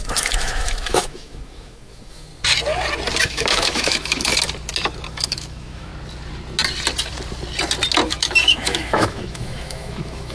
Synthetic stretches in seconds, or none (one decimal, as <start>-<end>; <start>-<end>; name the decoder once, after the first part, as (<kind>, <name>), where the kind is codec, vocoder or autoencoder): 0.0-2.3 (autoencoder, DAC-VAE); 3.2-4.3; 5.1-5.9; 8.1-10.3

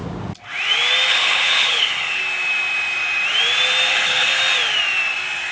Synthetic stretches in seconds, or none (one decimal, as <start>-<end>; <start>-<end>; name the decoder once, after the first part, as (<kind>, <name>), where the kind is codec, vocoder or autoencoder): 1.1-2.2 (codec, HILCodec); 3.9-4.3

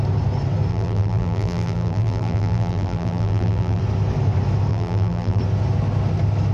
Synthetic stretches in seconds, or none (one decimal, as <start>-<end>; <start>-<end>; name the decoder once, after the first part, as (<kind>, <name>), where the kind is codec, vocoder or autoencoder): 0.7-3.8 (vocoder, BigVGAN v2); 4.7-5.4